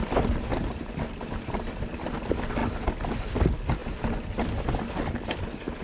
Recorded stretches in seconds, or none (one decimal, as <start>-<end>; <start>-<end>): 0.0-0.5; 1.1-5.8